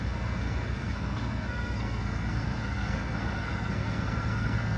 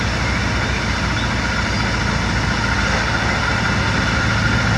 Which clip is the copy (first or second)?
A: first